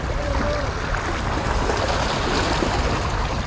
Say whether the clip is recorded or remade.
recorded